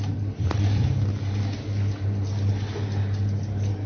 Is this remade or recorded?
recorded